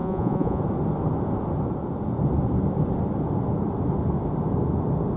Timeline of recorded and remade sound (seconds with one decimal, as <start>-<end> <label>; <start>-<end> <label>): 0.0-0.6 remade; 0.6-5.2 recorded